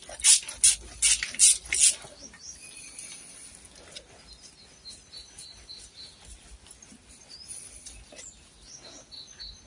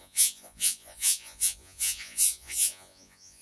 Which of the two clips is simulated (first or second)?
second